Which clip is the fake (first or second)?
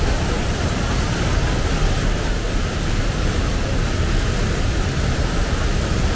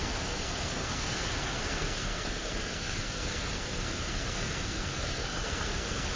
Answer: second